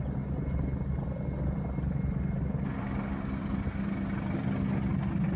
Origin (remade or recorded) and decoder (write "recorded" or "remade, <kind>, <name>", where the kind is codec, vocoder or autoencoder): recorded